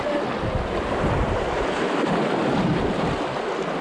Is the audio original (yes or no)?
yes